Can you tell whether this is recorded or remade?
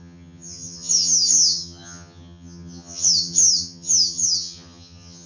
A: remade